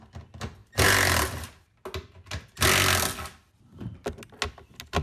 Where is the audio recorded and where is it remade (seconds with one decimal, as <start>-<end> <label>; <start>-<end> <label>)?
0.0-5.0 recorded